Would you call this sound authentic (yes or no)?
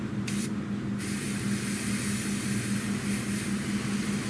yes